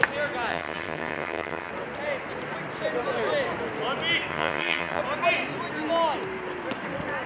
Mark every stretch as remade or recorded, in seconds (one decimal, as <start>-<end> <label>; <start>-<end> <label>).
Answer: 0.0-0.5 recorded; 0.5-1.7 remade; 1.7-4.3 recorded; 4.3-5.0 remade; 5.0-7.3 recorded